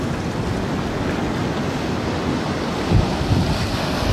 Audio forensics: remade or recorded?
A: recorded